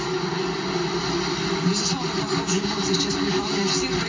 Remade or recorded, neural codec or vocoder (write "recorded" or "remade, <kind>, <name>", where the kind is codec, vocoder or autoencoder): recorded